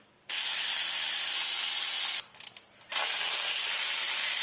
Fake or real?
fake